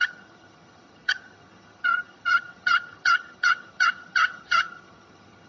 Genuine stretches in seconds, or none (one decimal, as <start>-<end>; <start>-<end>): none